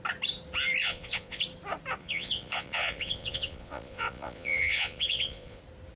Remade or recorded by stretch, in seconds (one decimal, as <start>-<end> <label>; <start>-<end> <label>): 0.0-0.8 recorded; 0.8-1.4 remade; 1.4-2.0 recorded; 2.0-5.6 remade; 5.6-6.0 recorded